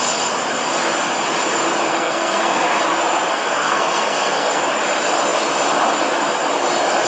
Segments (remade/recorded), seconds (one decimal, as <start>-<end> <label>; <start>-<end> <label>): 0.0-1.9 recorded; 1.9-2.8 remade; 2.8-3.3 recorded; 3.3-4.6 remade; 4.6-7.1 recorded